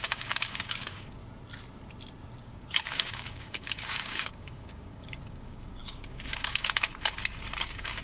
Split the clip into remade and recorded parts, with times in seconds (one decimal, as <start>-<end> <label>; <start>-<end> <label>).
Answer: 0.0-1.2 remade; 1.2-2.4 recorded; 2.4-6.9 remade; 6.9-7.6 recorded; 7.6-8.0 remade